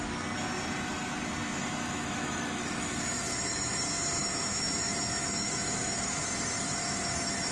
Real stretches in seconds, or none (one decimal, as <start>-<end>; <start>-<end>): 0.0-1.6; 3.8-4.2